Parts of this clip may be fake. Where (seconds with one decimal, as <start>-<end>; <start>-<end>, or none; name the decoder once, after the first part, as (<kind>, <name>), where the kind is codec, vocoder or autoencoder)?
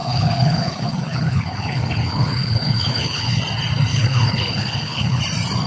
0.0-3.4 (codec, HILCodec); 3.9-5.2